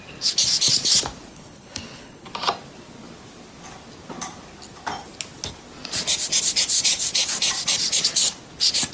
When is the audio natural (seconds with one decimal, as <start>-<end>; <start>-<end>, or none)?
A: 0.0-1.3; 2.3-8.9